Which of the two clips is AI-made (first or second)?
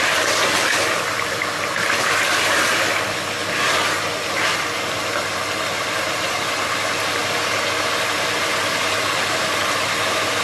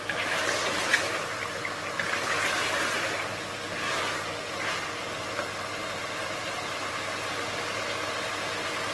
first